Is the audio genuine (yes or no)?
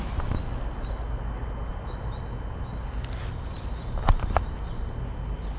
no